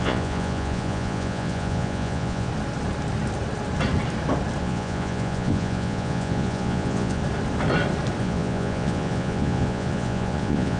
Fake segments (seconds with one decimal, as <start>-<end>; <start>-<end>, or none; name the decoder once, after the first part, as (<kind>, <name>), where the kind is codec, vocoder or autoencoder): 0.0-2.5 (vocoder, Vocos); 4.6-7.2; 8.2-10.8